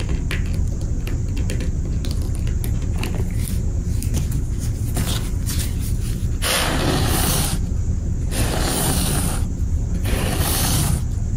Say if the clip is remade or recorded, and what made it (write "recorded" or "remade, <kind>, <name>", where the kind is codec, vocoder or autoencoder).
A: remade, vocoder, BigVGAN v2